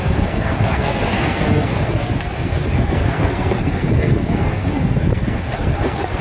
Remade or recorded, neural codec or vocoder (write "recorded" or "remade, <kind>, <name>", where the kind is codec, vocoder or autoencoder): remade, codec, SNAC